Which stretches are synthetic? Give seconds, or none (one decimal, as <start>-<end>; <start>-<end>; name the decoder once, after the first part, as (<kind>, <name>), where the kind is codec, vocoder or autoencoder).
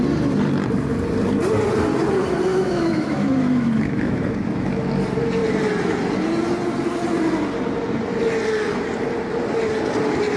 2.5-4.9 (autoencoder, DAC-VAE)